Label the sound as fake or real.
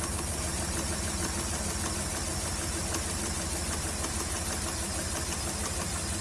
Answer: real